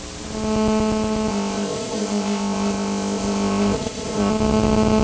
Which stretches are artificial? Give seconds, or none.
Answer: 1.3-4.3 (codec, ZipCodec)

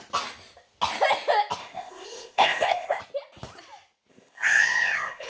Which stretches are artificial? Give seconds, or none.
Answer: 1.6-3.0 (codec, ZipCodec); 4.1-5.3